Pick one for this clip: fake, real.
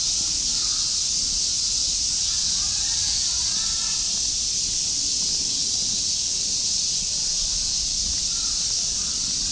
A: real